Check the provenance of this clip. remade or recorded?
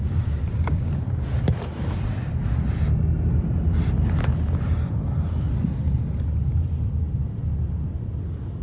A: recorded